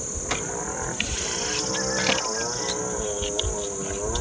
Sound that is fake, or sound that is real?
real